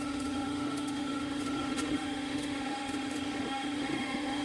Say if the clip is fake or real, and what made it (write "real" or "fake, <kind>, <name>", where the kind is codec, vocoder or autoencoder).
fake, autoencoder, DAC-VAE